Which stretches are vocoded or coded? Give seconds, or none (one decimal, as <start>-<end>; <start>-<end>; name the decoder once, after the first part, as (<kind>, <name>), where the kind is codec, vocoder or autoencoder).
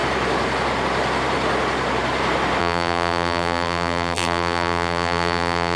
2.6-5.8 (vocoder, BigVGAN v2)